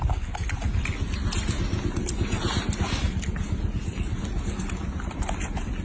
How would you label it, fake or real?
real